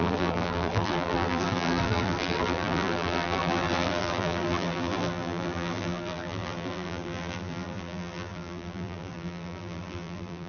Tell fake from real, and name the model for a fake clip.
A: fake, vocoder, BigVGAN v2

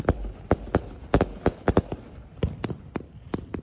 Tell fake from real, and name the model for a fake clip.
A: real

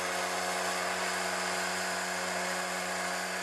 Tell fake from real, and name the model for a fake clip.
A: real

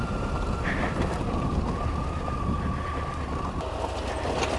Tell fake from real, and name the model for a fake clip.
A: real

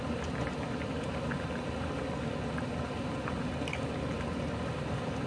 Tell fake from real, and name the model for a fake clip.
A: real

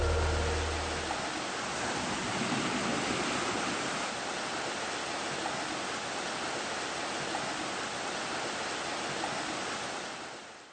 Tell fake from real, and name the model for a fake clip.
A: real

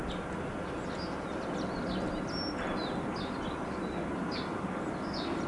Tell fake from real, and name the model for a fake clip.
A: real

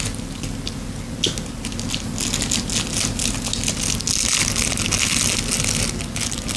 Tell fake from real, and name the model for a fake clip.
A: real